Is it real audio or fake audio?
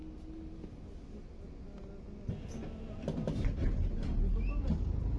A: real